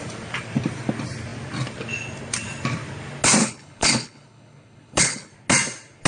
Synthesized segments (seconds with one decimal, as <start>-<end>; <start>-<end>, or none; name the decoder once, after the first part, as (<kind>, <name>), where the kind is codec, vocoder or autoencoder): 3.4-5.3 (codec, HILCodec)